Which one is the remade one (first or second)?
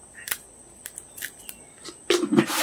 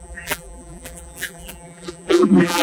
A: second